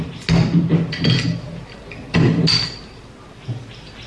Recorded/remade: recorded